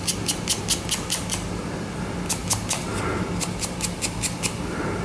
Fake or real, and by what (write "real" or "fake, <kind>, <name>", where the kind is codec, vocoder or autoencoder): real